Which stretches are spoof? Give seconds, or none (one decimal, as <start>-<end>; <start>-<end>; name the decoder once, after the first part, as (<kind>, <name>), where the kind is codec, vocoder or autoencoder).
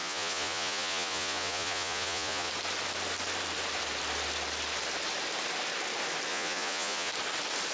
0.0-2.5 (vocoder, Vocos); 6.3-7.1